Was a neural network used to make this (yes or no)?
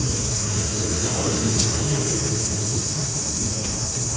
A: yes